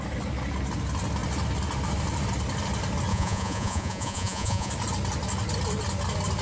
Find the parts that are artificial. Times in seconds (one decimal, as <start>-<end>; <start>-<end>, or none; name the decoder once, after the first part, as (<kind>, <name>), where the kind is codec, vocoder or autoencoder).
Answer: 3.1-4.7 (vocoder, Vocos)